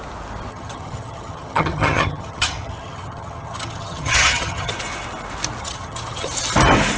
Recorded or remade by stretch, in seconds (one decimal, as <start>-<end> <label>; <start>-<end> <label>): 0.0-0.5 recorded; 0.5-4.7 remade; 4.7-5.6 recorded; 5.6-6.3 remade; 6.3-7.0 recorded